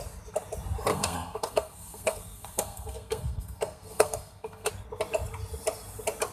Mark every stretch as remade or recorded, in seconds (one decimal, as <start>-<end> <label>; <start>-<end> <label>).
0.0-0.9 recorded; 0.9-4.7 remade; 4.7-6.3 recorded